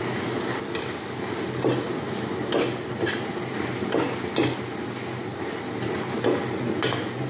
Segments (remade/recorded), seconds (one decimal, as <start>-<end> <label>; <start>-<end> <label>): 0.0-7.3 recorded